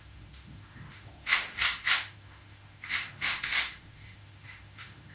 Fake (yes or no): yes